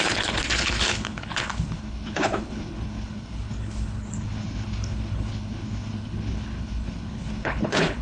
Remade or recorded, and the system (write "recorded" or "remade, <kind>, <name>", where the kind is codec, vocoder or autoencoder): remade, codec, HILCodec